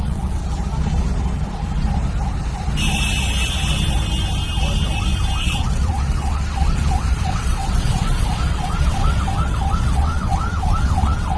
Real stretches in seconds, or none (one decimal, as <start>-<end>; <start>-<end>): 0.4-5.4